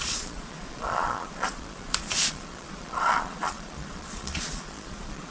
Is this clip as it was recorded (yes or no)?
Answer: no